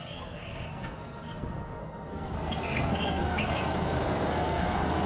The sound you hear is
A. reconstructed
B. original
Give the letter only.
A